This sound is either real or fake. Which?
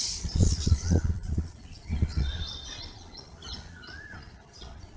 fake